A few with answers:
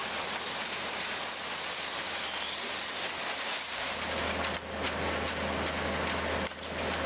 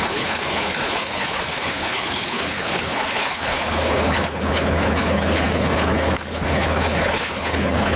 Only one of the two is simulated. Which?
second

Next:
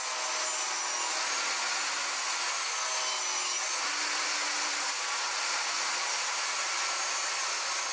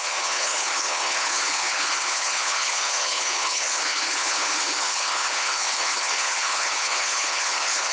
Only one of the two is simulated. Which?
second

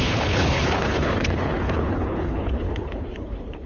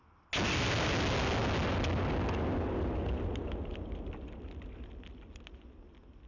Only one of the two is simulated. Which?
first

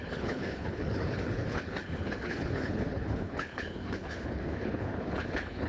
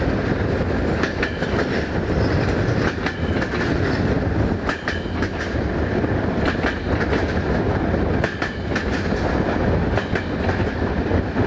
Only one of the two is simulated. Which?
first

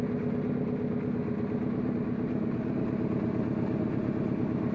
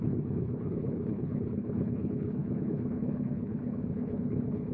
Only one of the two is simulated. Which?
second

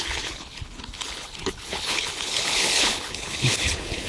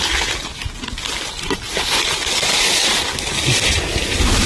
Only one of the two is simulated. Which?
first